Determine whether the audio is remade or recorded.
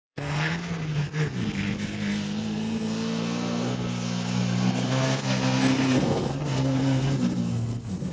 remade